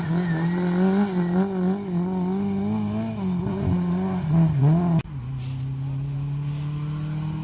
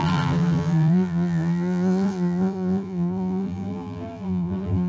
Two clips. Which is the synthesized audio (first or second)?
second